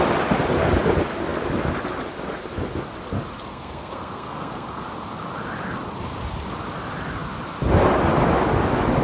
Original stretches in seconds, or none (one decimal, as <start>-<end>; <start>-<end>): 0.0-3.5; 4.8-9.0